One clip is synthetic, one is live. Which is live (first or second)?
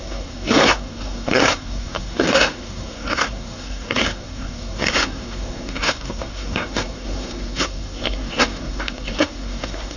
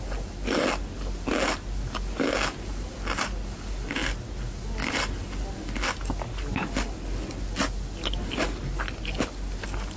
second